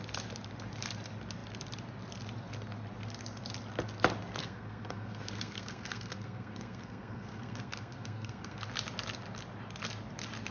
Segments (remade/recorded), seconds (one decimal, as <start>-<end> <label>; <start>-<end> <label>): 0.0-4.4 recorded; 4.4-8.7 remade; 8.7-10.5 recorded